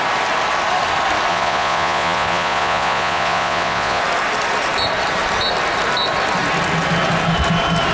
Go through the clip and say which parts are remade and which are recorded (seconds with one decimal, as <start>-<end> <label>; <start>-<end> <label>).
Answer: 0.0-1.3 recorded; 1.3-4.0 remade; 4.0-7.9 recorded